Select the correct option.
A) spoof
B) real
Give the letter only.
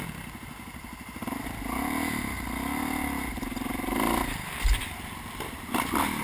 B